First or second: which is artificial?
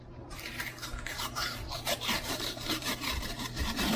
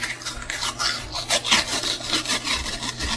first